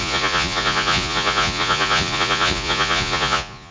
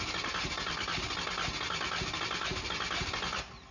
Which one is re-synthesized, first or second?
first